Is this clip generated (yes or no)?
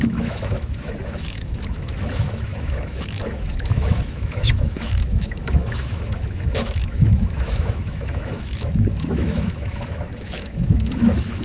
yes